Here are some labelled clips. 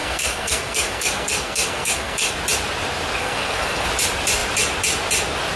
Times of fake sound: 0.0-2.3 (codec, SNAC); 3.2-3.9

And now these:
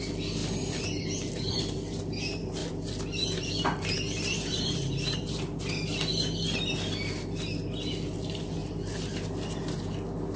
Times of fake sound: 0.4-1.6 (vocoder, BigVGAN v2); 2.6-5.6; 8.6-9.1

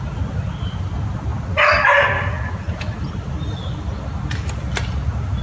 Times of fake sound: none

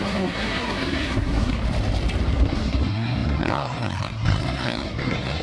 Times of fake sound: 0.0-1.6 (codec, SNAC); 2.3-5.4

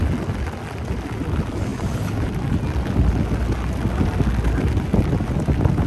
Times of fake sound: none

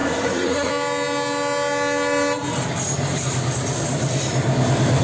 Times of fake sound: 0.0-0.7 (codec, SNAC)

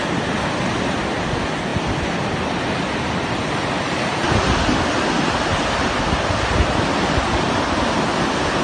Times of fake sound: 1.7-6.0 (vocoder, BigVGAN v2)

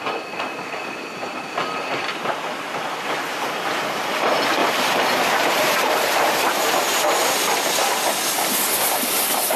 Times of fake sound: 4.6-7.7 (vocoder, BigVGAN v2)